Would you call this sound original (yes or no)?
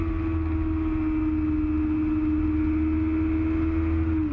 yes